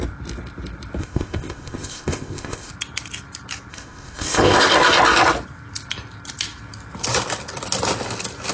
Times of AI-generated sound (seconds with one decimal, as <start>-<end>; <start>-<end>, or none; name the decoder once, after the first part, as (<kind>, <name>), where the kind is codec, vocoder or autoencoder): 1.0-2.7 (codec, ZipCodec); 3.7-4.6